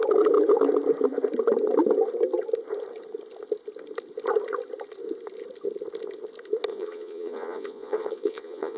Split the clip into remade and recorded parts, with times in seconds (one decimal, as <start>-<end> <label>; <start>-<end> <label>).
0.0-6.7 recorded; 6.7-8.8 remade